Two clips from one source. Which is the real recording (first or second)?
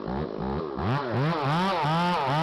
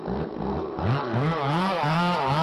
first